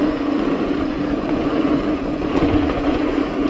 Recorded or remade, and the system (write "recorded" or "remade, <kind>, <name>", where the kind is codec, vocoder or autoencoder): remade, vocoder, Vocos